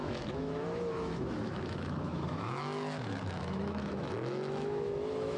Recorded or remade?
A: remade